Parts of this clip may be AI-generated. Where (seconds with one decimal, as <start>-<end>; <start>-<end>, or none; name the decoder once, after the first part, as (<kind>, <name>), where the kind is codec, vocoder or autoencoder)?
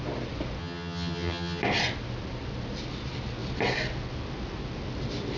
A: 0.6-1.6 (vocoder, HiFi-GAN)